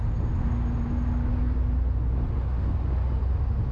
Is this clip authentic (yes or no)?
yes